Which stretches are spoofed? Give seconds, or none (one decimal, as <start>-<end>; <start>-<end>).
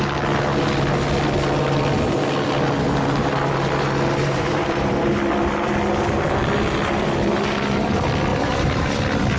4.2-5.1; 8.3-8.9